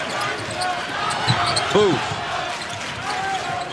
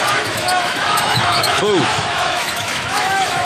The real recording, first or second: first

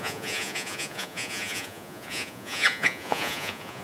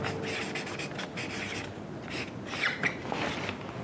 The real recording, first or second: second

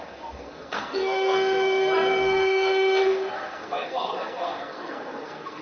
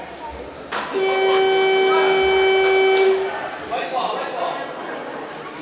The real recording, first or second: second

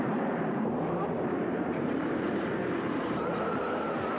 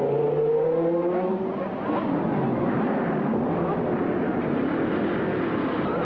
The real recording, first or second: second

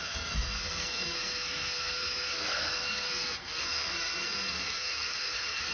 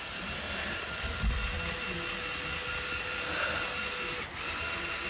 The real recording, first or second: second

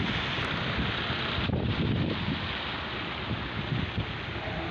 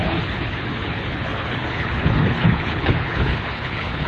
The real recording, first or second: first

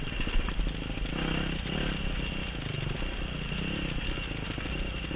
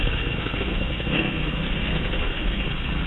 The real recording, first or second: first